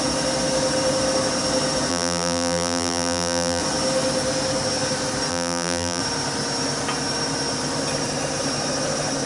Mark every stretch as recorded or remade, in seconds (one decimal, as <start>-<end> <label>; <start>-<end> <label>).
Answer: 0.0-1.9 recorded; 1.9-3.6 remade; 3.6-5.3 recorded; 5.3-6.0 remade; 6.0-9.3 recorded